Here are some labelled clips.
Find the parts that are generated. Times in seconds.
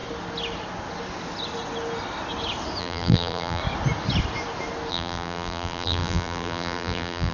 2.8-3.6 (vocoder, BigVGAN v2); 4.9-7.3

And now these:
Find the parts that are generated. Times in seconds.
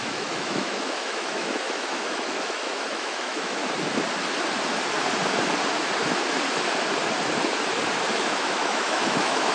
0.0-3.6 (autoencoder, DAC-VAE); 8.1-9.5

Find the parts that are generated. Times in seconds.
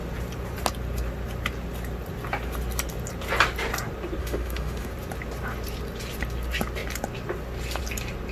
4.2-4.9 (autoencoder, DAC-VAE)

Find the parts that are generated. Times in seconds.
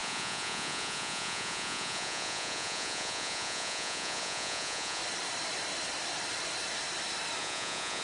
0.0-5.0 (vocoder, Vocos); 7.4-8.0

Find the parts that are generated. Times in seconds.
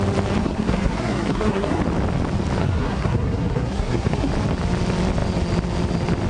0.4-1.8 (codec, SNAC); 2.6-4.3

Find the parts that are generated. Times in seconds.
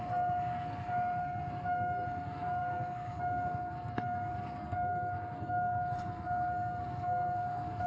0.0-7.9 (codec, SNAC)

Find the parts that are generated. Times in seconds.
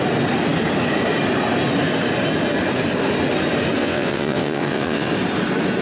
3.8-5.1 (vocoder, WaveNeXt)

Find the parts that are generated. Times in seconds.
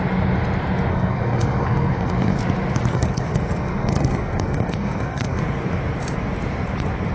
0.9-2.4 (codec, SNAC); 2.9-5.4